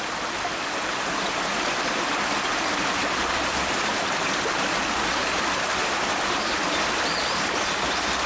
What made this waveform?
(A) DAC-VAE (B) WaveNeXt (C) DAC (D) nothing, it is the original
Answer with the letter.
D